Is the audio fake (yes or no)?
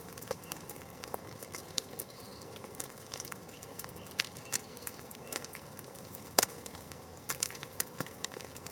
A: yes